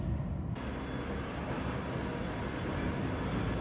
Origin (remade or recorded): recorded